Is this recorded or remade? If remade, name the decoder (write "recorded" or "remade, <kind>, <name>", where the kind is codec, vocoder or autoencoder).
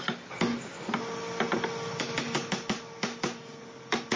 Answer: recorded